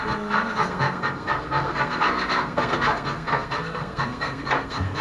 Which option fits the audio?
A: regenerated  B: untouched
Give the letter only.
A